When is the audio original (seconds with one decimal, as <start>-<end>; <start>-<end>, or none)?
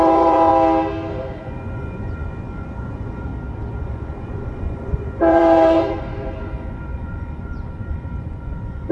0.5-1.1; 3.3-3.8